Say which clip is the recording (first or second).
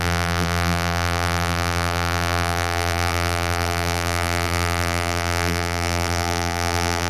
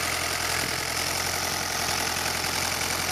second